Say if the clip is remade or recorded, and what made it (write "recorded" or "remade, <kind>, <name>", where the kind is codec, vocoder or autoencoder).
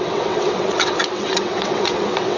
remade, vocoder, WaveNeXt